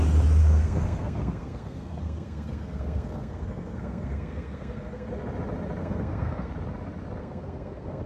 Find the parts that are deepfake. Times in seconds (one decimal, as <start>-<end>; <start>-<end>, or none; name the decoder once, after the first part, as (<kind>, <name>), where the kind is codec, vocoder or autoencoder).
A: 0.4-5.1 (codec, SNAC); 5.8-6.5; 7.2-8.1